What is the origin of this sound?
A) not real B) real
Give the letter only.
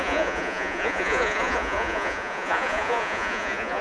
A